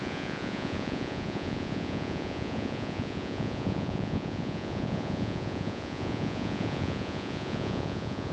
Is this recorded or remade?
remade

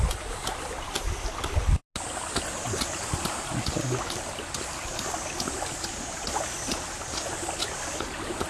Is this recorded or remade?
recorded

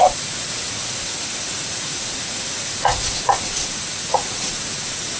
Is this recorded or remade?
remade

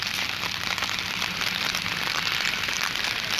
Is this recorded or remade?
recorded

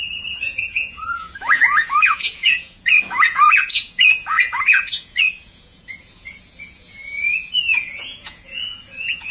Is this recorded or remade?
remade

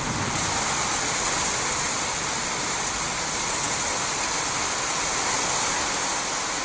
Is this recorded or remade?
recorded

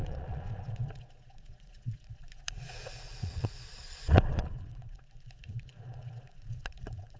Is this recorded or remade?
remade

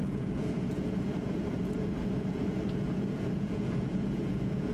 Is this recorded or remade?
remade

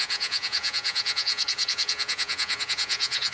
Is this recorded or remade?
remade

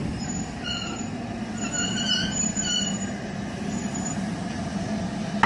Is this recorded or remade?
recorded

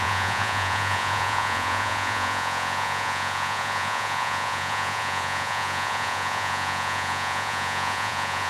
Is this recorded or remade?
remade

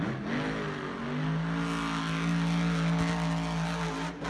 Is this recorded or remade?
recorded